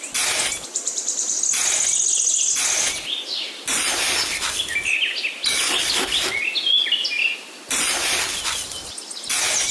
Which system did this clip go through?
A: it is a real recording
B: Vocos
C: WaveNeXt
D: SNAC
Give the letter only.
A